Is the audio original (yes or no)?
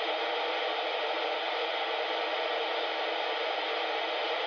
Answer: yes